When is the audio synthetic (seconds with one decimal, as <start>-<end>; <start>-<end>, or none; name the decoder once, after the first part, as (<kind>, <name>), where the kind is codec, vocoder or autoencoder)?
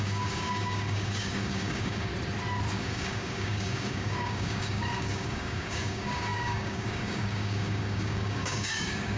0.0-2.1 (codec, DAC); 2.8-9.2